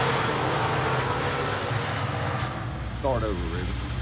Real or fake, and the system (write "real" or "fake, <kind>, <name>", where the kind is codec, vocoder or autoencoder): real